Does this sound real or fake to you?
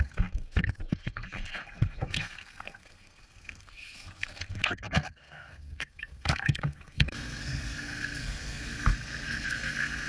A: fake